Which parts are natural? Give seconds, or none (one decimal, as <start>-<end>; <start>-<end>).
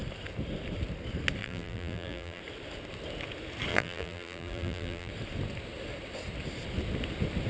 0.0-1.4; 2.4-3.7; 5.1-7.5